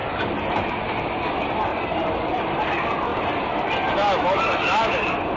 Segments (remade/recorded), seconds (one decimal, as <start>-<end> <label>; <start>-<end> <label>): 0.0-1.7 recorded; 1.7-2.6 remade; 2.6-3.1 recorded; 3.1-4.4 remade; 4.4-5.4 recorded